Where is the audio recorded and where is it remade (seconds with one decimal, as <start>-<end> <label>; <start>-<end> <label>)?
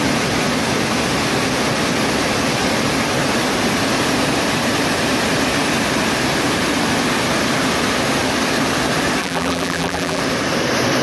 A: 0.0-9.2 recorded; 9.2-10.2 remade; 10.2-11.0 recorded